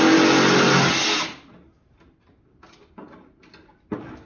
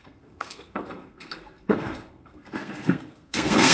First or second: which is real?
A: first